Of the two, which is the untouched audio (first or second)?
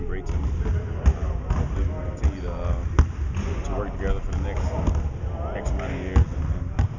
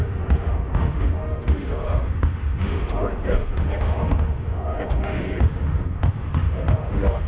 first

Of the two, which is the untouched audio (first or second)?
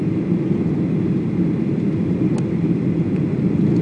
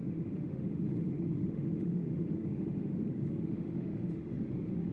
first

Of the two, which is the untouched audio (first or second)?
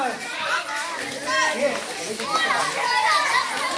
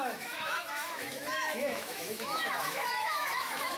first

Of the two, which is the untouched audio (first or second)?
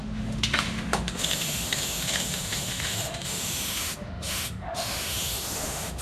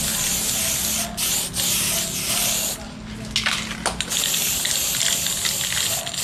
second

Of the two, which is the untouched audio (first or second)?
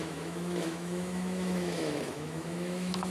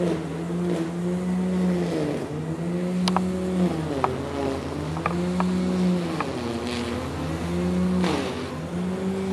second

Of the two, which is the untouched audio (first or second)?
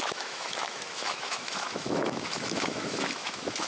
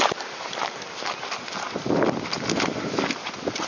second